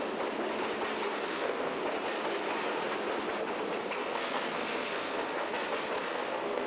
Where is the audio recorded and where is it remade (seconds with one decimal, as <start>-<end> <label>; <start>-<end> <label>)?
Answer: 0.0-1.2 recorded; 1.2-1.8 remade; 1.8-4.0 recorded; 4.0-5.5 remade; 5.5-6.0 recorded; 6.0-6.7 remade